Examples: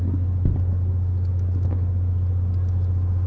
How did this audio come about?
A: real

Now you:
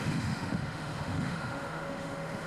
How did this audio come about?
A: fake